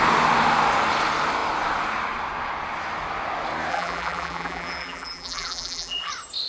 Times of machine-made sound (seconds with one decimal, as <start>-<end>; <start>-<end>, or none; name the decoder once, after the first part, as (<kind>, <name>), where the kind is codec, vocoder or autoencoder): 3.7-6.1 (vocoder, BigVGAN v2)